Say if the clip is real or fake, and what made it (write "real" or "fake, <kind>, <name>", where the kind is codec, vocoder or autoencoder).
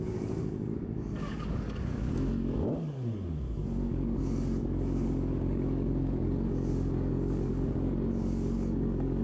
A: fake, codec, DAC